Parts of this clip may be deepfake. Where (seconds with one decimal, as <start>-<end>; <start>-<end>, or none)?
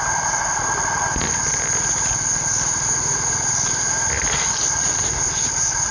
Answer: none